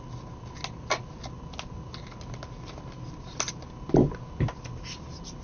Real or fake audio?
real